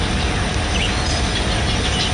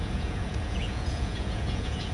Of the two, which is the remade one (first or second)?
second